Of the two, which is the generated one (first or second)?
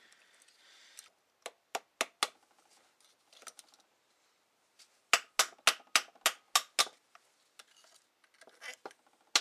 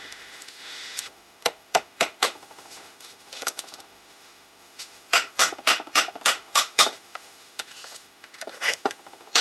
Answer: second